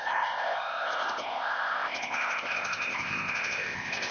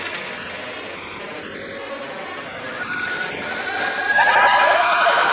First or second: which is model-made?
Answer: first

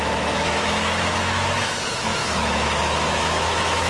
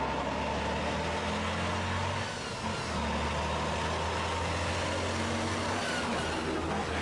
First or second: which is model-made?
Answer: first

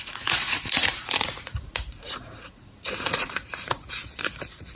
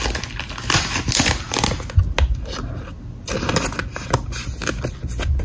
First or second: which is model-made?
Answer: first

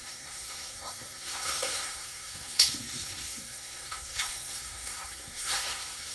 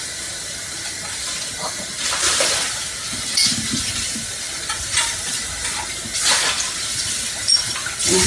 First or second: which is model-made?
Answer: first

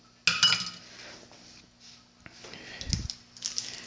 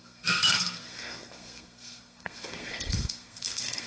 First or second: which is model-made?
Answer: second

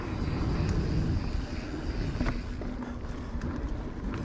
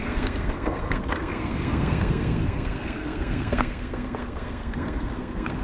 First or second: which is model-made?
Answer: second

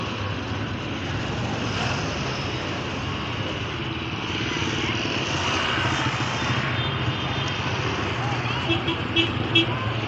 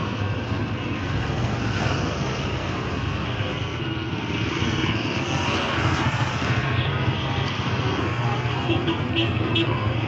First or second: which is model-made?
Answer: second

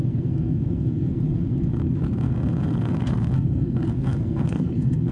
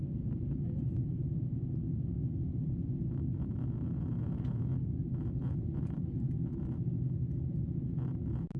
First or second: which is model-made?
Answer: first